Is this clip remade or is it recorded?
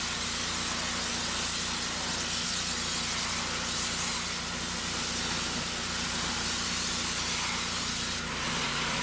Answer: recorded